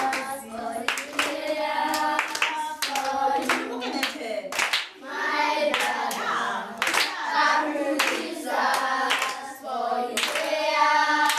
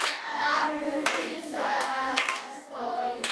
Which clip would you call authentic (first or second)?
first